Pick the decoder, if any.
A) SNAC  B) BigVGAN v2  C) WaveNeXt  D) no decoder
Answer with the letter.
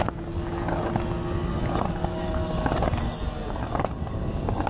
D